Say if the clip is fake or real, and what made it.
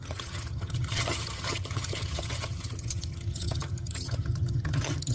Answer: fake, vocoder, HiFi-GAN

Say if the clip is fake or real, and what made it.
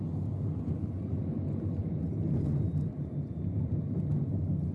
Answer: real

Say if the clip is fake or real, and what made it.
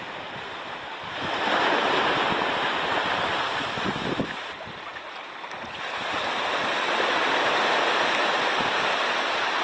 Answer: real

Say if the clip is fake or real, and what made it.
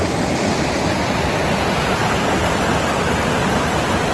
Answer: real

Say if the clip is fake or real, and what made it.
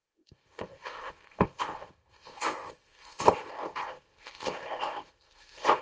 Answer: fake, codec, ZipCodec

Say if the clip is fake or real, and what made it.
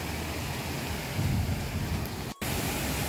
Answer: real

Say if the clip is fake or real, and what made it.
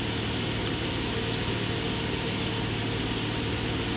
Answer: real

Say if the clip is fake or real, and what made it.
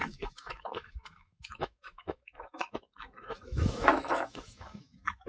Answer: fake, autoencoder, DAC-VAE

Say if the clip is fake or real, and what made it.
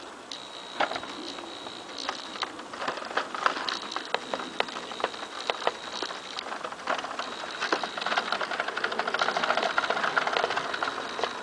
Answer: real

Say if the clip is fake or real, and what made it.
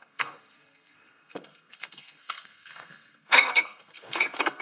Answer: fake, codec, SNAC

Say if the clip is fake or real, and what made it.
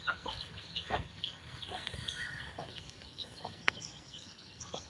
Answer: fake, codec, SNAC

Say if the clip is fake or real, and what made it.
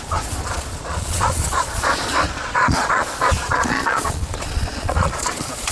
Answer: fake, vocoder, Vocos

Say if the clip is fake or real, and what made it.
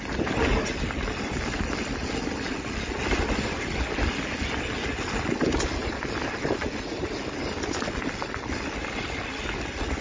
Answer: real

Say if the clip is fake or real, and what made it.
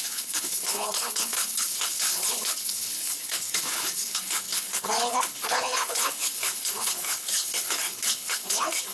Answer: fake, codec, HILCodec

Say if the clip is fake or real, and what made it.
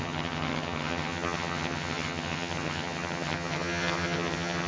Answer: fake, vocoder, HiFi-GAN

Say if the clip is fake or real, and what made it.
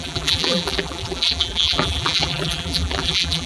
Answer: fake, vocoder, BigVGAN v2